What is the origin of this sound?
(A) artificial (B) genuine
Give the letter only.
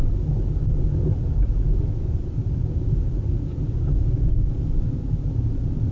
B